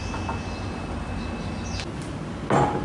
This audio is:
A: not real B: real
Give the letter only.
B